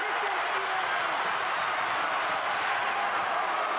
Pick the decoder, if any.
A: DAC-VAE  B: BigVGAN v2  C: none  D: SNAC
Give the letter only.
C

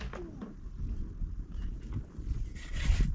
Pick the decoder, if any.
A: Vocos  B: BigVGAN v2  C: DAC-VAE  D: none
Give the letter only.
D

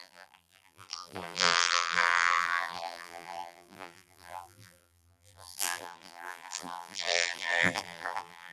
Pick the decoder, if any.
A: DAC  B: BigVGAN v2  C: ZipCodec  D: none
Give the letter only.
B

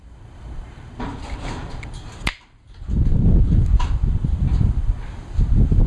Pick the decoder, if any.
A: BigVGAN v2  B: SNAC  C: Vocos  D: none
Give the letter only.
D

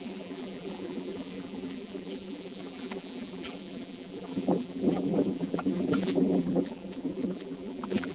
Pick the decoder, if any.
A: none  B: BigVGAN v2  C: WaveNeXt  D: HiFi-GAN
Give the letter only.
B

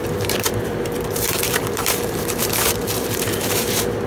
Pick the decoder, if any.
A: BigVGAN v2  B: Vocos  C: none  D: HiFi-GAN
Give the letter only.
A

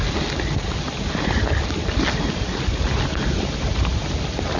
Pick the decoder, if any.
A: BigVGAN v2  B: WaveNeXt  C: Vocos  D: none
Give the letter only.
D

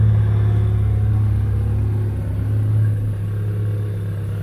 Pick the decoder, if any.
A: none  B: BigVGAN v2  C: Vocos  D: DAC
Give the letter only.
A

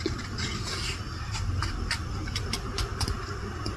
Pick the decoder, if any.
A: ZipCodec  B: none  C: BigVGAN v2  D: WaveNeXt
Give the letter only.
B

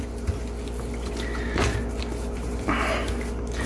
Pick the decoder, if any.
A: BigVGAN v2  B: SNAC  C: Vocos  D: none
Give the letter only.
D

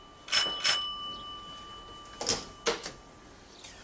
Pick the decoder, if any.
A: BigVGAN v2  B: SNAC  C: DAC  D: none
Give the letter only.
D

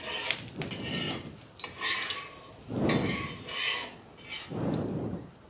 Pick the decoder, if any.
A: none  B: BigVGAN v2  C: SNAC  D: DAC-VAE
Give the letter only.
A